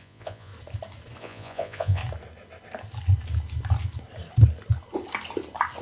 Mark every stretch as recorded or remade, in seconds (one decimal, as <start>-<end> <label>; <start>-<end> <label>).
0.0-0.5 remade; 0.5-1.2 recorded; 1.2-2.0 remade; 2.0-5.8 recorded

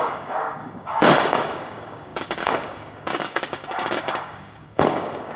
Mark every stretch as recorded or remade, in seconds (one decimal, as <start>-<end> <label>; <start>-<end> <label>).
0.0-5.4 remade

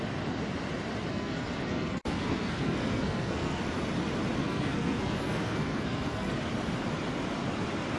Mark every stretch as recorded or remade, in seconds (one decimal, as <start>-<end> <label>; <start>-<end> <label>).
0.0-1.1 recorded; 1.1-3.6 remade; 3.6-4.4 recorded; 4.4-6.5 remade; 6.5-8.0 recorded

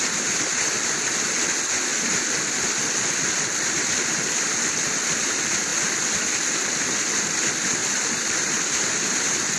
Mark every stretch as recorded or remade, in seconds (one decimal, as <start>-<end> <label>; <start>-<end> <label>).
0.0-0.7 remade; 0.7-1.9 recorded; 1.9-4.7 remade; 4.7-7.8 recorded; 7.8-9.6 remade

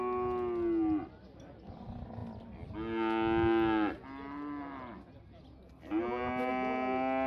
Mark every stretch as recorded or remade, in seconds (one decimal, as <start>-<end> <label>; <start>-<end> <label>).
0.0-7.3 recorded

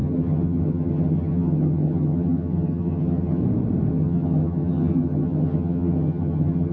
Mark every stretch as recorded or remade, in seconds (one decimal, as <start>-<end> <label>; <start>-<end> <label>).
0.0-3.4 remade; 3.4-3.9 recorded; 3.9-6.7 remade